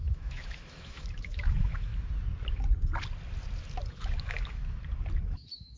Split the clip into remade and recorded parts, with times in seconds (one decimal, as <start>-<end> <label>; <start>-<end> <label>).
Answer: 0.0-1.9 remade; 1.9-3.9 recorded; 3.9-4.6 remade; 4.6-5.2 recorded; 5.2-5.8 remade